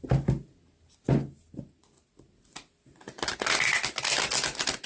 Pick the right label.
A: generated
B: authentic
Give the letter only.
B